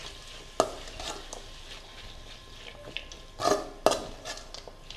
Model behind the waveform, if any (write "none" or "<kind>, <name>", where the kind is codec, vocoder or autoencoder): none